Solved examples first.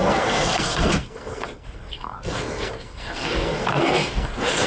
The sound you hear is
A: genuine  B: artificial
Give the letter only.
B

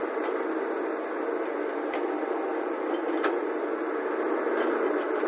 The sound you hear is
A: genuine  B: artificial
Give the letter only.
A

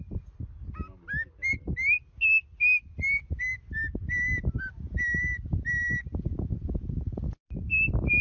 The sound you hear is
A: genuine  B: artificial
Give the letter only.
A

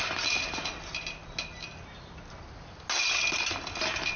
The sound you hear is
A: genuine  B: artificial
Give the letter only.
A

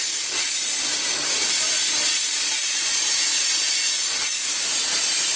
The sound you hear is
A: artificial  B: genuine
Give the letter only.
B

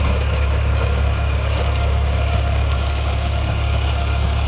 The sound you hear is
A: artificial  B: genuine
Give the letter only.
A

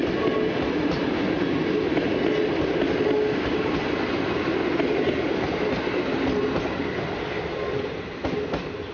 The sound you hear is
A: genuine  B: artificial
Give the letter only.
A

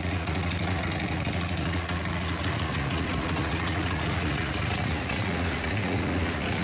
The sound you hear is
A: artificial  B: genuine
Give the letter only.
A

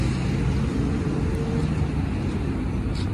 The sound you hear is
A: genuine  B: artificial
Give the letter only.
A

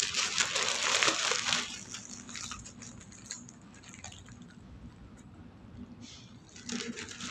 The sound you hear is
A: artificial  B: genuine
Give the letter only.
B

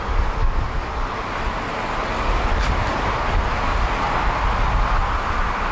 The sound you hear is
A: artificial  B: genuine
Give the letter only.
B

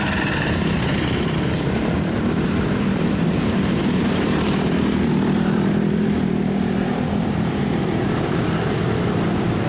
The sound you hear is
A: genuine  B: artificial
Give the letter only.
B